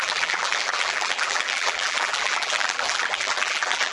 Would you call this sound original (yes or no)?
no